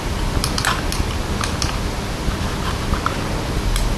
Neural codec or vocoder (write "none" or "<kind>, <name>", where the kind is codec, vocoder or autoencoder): none